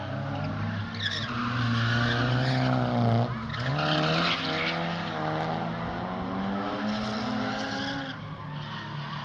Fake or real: real